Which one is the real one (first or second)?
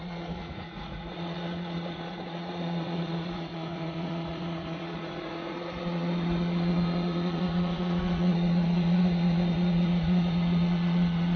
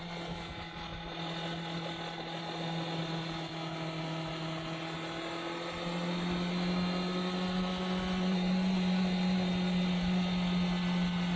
second